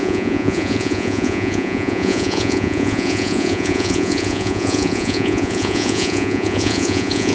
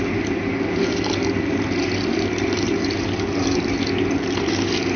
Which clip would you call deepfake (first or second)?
first